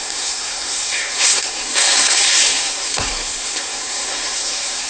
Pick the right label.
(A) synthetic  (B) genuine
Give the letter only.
A